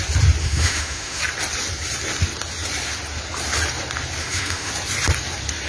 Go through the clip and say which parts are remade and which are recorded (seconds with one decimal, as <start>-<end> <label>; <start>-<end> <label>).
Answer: 0.0-0.4 recorded; 0.4-1.2 remade; 1.2-4.2 recorded; 4.2-4.7 remade; 4.7-5.7 recorded